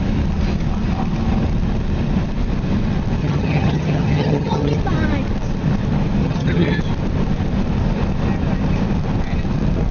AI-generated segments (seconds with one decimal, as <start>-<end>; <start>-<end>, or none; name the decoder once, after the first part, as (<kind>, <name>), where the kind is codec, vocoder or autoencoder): 3.2-4.8 (vocoder, HiFi-GAN); 6.2-6.8